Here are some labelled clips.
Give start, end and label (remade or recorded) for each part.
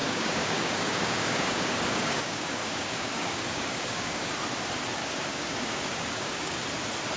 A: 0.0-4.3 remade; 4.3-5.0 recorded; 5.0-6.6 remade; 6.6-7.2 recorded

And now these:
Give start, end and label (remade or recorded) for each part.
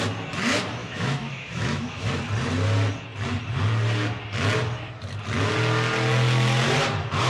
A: 0.0-0.8 recorded; 0.8-2.1 remade; 2.1-7.3 recorded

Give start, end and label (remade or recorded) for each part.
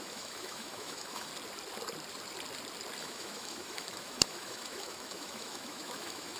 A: 0.0-1.3 remade; 1.3-3.0 recorded; 3.0-6.4 remade